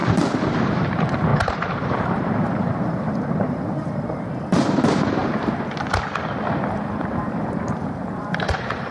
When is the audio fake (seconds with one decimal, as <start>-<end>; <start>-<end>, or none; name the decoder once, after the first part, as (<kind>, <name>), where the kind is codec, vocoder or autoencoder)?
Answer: 0.0-5.2 (vocoder, BigVGAN v2); 7.7-8.9